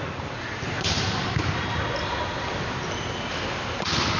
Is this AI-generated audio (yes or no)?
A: no